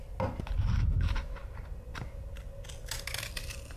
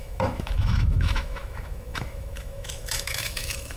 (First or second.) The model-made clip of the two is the second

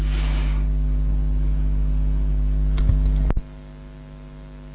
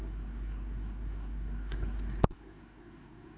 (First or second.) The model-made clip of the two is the second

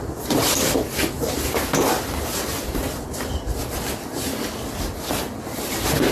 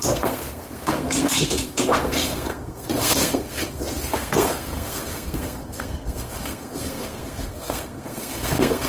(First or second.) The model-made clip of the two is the second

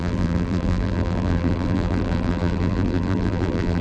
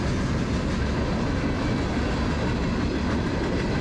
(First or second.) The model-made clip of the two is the first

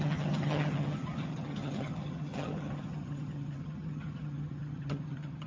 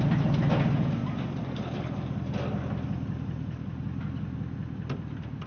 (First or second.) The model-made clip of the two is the first